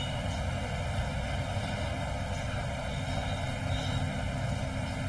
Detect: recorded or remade recorded